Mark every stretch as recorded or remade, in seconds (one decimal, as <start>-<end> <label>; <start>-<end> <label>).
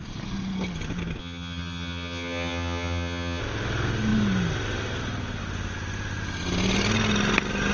0.0-1.2 recorded; 1.2-3.4 remade; 3.4-7.7 recorded